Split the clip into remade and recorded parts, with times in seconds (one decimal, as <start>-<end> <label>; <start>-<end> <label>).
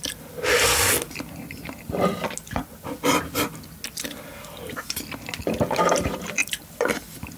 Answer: 0.0-6.4 recorded; 6.4-7.0 remade; 7.0-7.4 recorded